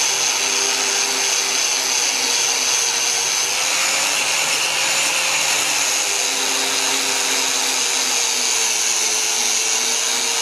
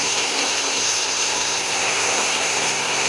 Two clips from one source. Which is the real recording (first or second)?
first